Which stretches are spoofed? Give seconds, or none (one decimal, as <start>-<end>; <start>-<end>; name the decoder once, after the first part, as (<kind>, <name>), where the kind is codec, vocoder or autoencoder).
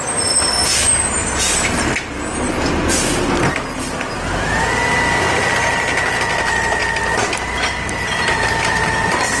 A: 6.8-7.7 (vocoder, BigVGAN v2)